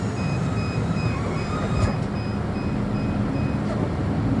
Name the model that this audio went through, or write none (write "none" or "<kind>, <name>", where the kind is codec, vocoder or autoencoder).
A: none